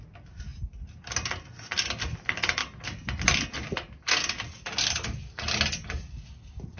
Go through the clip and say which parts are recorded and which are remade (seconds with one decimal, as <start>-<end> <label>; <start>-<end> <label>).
0.0-6.8 recorded